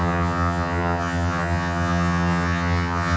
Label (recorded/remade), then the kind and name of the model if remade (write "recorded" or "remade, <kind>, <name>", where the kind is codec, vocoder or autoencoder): remade, vocoder, HiFi-GAN